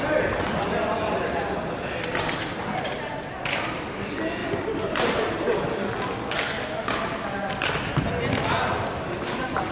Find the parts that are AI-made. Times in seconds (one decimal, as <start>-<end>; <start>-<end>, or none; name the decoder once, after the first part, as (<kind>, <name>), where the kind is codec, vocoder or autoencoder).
4.4-5.5 (vocoder, BigVGAN v2)